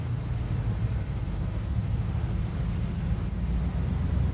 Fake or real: real